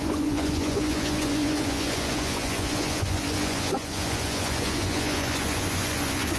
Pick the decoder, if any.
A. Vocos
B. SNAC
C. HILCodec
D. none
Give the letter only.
A